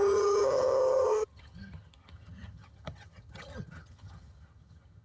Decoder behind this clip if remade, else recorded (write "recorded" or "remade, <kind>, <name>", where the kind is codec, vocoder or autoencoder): remade, vocoder, HiFi-GAN